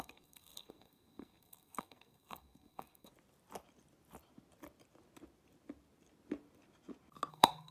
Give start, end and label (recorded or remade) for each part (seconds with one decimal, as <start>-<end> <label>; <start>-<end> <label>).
0.0-3.1 remade; 3.1-7.3 recorded; 7.3-7.7 remade